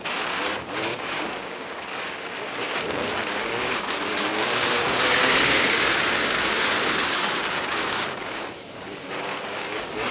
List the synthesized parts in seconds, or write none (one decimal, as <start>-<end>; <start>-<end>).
0.0-10.1